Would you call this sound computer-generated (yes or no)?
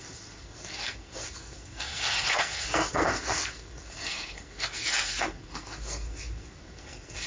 yes